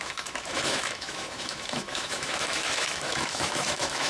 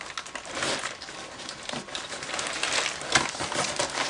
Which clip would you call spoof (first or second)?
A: first